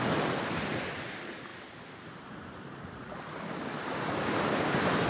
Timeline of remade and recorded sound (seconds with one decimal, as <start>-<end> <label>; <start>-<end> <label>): 0.0-5.1 recorded